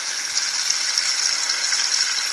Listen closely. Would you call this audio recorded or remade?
recorded